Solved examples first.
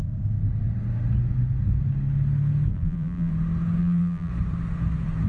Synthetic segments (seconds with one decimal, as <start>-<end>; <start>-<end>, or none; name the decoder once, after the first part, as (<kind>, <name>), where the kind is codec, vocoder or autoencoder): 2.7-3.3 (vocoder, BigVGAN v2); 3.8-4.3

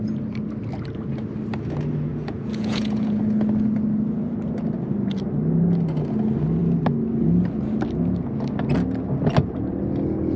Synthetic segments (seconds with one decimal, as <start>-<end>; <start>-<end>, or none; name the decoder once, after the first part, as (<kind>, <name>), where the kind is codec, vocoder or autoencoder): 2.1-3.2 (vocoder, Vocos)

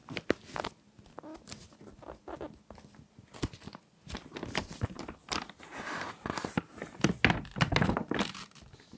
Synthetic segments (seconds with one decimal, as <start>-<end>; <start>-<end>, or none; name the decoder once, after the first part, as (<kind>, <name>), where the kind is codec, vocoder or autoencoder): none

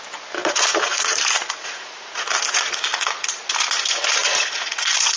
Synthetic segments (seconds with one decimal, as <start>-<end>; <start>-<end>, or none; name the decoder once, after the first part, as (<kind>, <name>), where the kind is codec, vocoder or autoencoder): 0.4-3.5 (vocoder, Vocos); 4.2-5.2